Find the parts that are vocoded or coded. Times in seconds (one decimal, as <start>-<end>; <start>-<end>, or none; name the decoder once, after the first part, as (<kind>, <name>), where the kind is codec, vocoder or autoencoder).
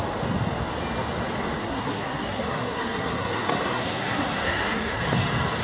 1.6-5.0 (codec, SNAC)